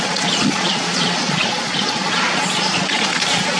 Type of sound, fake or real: fake